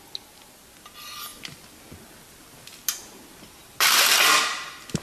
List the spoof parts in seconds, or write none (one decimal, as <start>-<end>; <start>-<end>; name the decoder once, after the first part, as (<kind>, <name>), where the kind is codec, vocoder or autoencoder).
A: none